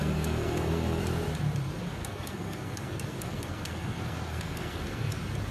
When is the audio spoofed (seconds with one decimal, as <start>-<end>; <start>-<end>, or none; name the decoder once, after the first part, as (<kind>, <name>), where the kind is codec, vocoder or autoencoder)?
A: 0.0-1.0 (codec, SNAC); 1.8-5.1